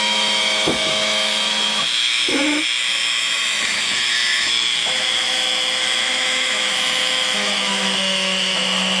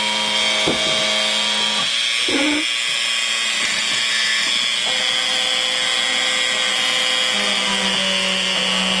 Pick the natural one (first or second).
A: second